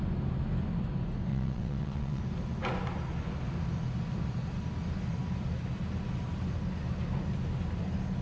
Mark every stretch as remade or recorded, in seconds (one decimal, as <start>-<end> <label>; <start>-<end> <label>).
0.0-1.3 recorded; 1.3-2.2 remade; 2.2-8.2 recorded